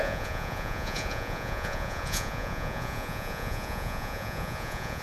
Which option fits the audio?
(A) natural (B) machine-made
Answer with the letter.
B